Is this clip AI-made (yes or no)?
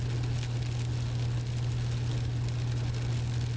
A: no